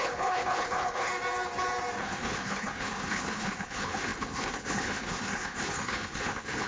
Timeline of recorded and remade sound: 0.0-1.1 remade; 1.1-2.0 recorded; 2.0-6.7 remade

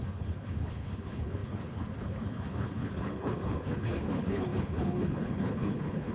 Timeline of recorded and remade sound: 0.0-6.1 remade